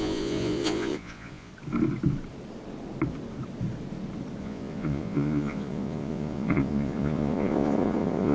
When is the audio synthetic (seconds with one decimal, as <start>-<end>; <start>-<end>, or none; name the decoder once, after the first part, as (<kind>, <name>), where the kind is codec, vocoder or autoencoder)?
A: 0.0-1.5 (vocoder, Vocos); 4.4-8.3

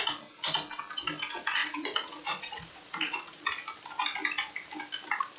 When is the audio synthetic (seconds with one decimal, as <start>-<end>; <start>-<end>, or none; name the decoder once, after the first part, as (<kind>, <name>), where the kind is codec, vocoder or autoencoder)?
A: 1.6-3.4 (vocoder, Vocos)

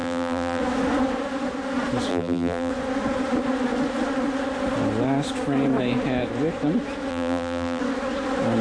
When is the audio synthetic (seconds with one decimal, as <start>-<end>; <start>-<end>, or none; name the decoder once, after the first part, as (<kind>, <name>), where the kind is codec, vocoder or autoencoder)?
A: 0.0-0.6 (vocoder, BigVGAN v2); 2.1-2.7; 7.1-7.8

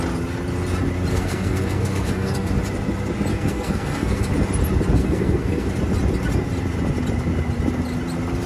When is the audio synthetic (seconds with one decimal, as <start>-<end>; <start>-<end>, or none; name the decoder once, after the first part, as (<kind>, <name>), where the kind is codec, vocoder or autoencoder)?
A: 1.1-2.5 (codec, SNAC); 3.3-4.3; 5.0-5.7

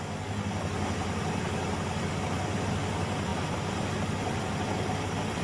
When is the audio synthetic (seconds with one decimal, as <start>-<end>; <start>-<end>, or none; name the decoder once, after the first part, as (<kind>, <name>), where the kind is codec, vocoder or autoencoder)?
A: none

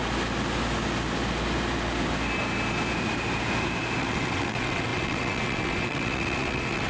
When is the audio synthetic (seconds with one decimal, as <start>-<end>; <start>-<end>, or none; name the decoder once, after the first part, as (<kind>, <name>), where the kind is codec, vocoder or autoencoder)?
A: 4.0-6.9 (vocoder, WaveNeXt)

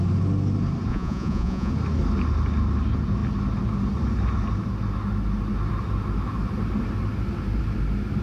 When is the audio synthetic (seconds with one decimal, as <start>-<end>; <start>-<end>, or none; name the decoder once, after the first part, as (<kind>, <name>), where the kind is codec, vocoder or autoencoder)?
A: 0.9-1.7 (vocoder, Vocos)

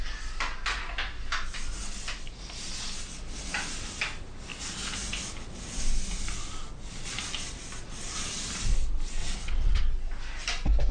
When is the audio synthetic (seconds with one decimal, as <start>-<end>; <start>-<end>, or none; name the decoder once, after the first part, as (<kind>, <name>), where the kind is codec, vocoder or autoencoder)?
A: 9.2-9.8 (vocoder, WaveNeXt)